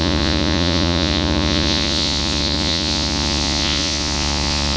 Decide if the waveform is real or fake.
fake